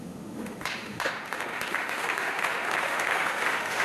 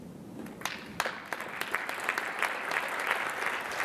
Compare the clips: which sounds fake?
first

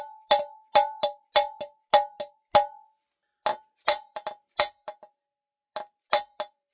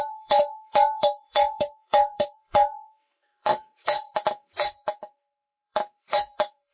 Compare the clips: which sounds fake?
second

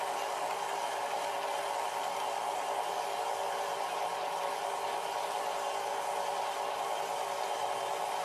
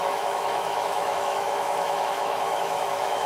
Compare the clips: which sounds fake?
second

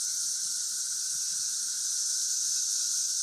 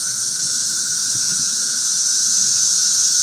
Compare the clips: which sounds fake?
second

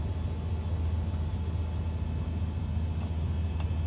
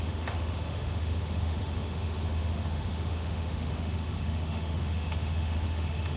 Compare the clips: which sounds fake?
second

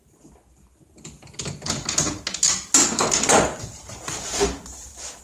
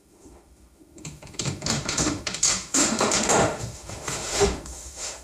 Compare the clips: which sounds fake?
second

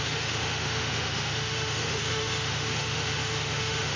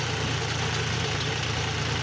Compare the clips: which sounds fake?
first